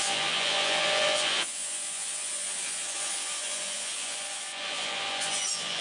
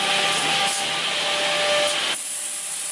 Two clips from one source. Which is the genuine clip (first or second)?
second